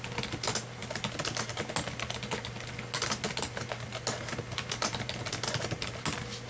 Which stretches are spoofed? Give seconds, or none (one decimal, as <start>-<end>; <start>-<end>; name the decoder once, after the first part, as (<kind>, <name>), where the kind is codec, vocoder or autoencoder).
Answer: none